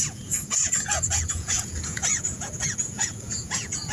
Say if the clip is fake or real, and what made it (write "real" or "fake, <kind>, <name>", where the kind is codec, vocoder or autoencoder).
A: fake, vocoder, Vocos